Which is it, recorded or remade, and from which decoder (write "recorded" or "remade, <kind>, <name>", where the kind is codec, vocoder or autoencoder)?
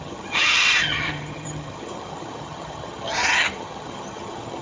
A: remade, vocoder, HiFi-GAN